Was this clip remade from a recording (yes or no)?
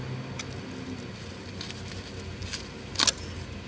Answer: no